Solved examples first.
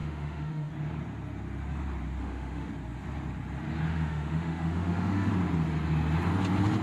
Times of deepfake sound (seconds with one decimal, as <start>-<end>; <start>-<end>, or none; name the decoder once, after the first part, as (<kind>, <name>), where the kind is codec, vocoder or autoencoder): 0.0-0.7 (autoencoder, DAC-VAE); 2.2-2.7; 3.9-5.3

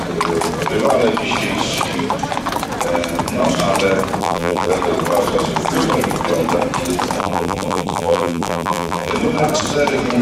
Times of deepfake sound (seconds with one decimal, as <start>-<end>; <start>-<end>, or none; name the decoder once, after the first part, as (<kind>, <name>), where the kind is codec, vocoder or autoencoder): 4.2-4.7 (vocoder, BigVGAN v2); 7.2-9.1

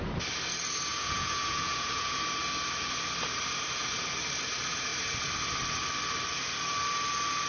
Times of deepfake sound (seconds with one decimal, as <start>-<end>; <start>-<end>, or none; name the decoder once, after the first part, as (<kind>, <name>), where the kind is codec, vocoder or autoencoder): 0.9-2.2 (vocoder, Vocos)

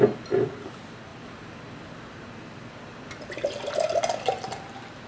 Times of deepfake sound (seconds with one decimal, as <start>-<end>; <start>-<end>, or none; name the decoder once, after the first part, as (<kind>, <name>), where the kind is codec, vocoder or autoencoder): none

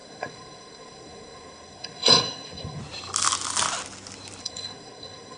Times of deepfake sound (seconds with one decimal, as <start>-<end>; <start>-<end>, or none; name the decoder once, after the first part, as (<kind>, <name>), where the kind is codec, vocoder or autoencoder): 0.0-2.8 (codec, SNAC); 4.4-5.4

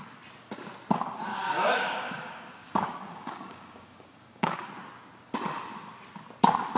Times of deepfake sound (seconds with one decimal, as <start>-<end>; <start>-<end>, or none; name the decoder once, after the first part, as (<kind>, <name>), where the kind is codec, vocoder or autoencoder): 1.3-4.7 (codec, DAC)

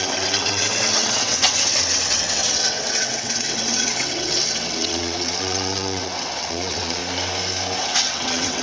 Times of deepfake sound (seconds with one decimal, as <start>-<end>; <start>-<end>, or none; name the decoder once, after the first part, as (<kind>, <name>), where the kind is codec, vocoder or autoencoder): 0.0-7.0 (vocoder, WaveNeXt); 7.8-8.6